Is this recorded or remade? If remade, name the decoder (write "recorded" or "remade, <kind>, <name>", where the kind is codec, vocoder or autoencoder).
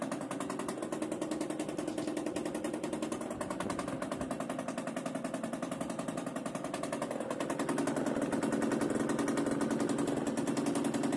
recorded